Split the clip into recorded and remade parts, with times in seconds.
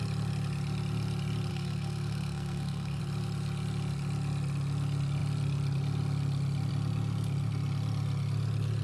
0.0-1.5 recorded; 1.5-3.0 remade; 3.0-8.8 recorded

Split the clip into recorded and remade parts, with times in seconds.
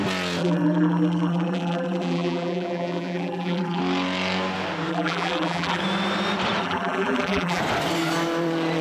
0.0-0.4 recorded; 0.4-3.8 remade; 3.8-4.9 recorded; 4.9-5.8 remade; 5.8-6.6 recorded; 6.6-7.6 remade; 7.6-8.8 recorded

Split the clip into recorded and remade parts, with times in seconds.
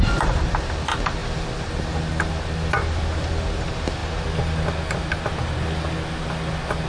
0.0-6.9 recorded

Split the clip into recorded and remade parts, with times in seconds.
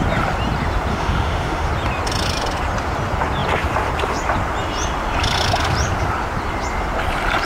0.0-0.9 recorded; 0.9-1.7 remade; 1.7-7.5 recorded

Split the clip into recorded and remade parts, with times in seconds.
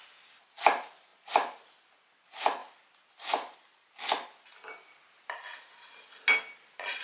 0.0-7.0 recorded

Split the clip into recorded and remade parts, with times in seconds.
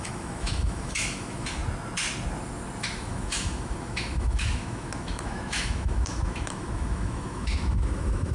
0.0-1.6 remade; 1.6-2.8 recorded; 2.8-8.3 remade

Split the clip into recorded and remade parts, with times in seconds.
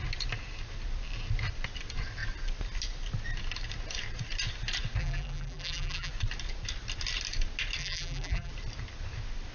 0.0-5.0 recorded; 5.0-6.1 remade; 6.1-7.8 recorded; 7.8-8.5 remade; 8.5-9.5 recorded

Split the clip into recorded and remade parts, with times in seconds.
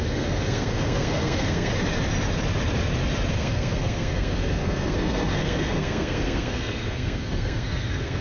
0.0-1.7 remade; 1.7-3.3 recorded; 3.3-8.2 remade